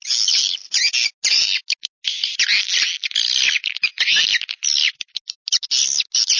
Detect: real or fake real